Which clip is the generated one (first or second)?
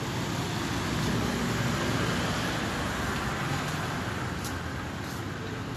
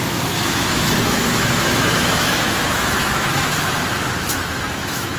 second